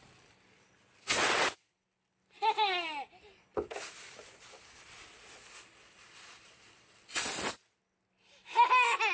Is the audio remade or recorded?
recorded